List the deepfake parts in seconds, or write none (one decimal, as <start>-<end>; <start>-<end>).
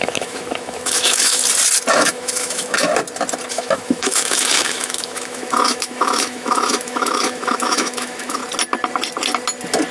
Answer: 0.0-1.4; 1.9-2.9; 3.5-8.4